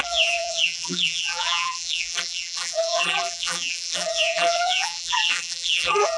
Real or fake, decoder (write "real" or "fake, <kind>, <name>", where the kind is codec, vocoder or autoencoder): fake, vocoder, BigVGAN v2